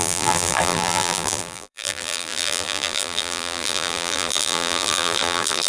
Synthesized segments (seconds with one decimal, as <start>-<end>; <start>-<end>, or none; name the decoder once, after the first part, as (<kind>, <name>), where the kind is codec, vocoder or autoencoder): 0.0-5.7 (vocoder, BigVGAN v2)